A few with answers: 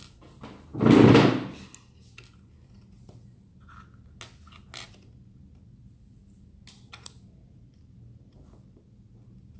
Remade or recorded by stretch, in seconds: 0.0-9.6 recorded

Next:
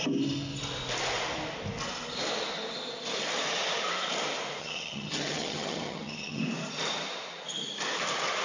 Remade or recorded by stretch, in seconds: 0.0-4.6 recorded; 4.6-6.4 remade; 6.4-8.4 recorded